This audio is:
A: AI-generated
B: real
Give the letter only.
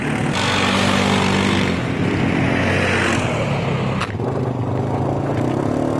B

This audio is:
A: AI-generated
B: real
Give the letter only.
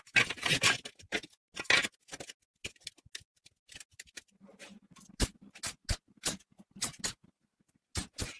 B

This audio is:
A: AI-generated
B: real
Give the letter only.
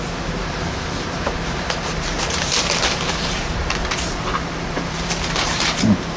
A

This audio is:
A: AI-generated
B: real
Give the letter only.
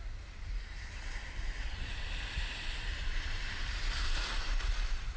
A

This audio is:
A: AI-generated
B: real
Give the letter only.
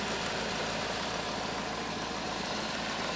A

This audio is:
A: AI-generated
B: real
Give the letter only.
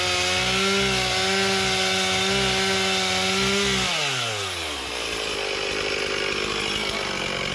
B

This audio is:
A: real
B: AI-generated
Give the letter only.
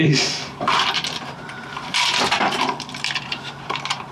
B